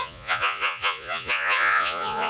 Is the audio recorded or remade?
remade